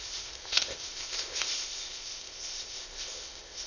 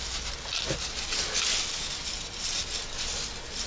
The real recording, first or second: second